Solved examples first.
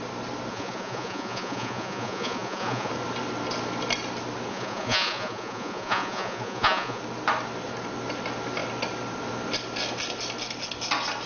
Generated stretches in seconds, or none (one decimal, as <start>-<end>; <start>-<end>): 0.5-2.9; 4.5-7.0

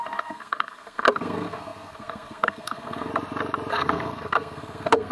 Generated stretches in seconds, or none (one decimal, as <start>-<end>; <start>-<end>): 0.0-3.1; 3.7-5.1

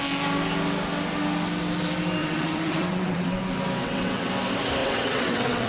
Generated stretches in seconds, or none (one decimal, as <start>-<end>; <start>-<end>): 2.2-3.4; 3.8-4.3; 4.8-5.7